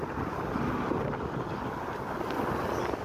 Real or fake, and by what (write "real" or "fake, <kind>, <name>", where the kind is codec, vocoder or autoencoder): real